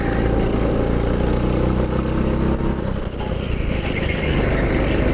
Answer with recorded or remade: recorded